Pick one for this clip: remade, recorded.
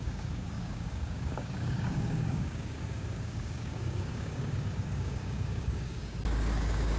remade